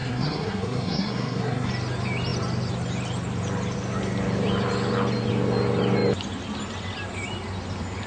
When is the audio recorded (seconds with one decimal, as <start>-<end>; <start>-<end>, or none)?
1.7-8.1